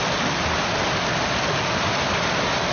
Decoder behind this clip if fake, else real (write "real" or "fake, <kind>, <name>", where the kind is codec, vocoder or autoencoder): real